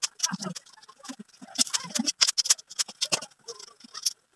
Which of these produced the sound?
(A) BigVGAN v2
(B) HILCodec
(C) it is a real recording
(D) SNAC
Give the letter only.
C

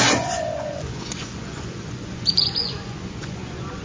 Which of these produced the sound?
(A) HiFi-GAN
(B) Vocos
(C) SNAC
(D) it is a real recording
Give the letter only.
B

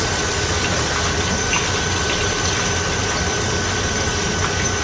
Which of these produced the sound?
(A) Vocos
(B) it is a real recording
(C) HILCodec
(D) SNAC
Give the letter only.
B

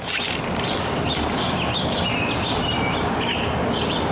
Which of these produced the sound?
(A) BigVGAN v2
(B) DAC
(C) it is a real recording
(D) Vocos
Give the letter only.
C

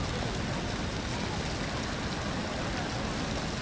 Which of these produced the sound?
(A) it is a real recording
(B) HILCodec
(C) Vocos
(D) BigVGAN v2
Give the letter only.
A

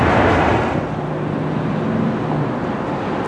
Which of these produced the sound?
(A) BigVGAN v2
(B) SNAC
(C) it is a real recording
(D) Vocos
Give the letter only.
C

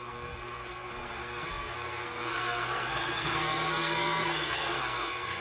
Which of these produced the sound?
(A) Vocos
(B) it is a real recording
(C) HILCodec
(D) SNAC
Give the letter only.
D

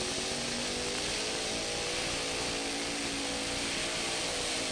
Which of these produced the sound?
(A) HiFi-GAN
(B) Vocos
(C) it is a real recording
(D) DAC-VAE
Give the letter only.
C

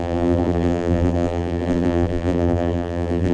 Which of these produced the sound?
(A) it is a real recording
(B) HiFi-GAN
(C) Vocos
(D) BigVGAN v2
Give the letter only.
D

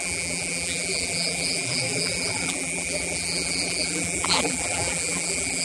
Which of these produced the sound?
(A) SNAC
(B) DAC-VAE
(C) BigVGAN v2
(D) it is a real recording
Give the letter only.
C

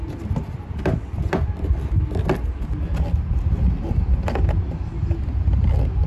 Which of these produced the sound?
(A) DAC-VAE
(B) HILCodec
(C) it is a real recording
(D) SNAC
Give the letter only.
C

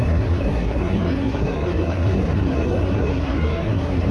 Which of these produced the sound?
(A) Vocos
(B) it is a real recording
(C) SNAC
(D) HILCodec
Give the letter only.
C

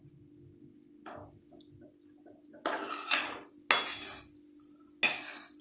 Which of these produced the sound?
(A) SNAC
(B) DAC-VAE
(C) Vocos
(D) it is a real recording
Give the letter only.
D